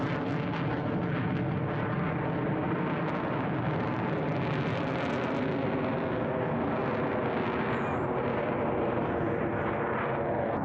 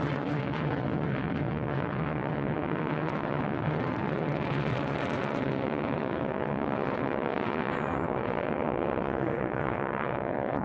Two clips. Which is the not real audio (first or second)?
second